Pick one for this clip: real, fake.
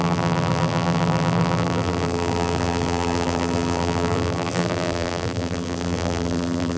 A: fake